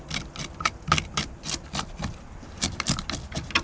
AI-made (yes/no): no